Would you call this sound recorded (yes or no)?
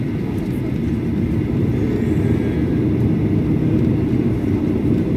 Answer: no